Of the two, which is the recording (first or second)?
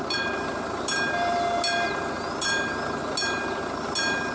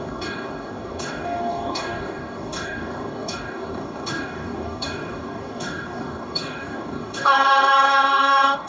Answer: first